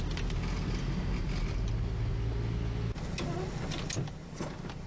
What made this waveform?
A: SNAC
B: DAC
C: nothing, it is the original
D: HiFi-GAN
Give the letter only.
C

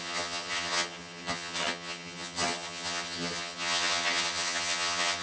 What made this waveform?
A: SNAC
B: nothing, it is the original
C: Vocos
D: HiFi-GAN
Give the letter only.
D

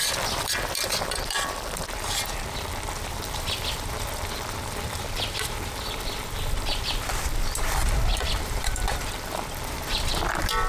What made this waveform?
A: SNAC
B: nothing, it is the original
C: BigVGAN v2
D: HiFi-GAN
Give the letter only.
C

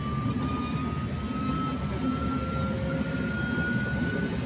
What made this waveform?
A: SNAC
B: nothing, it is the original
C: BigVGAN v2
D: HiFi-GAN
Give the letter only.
B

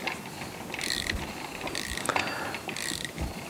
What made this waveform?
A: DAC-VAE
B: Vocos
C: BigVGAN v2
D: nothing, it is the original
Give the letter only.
D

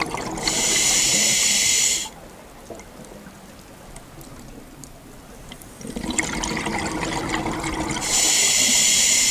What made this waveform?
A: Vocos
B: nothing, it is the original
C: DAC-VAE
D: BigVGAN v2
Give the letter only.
B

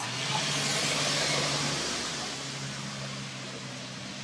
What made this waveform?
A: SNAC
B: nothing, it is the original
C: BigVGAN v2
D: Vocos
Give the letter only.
B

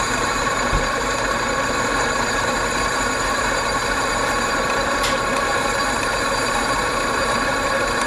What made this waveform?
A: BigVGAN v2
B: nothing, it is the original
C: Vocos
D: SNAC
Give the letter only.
A